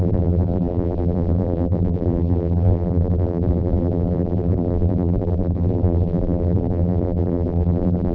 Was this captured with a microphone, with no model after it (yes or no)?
no